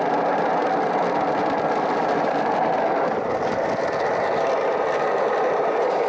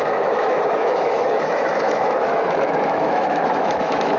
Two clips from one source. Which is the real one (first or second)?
first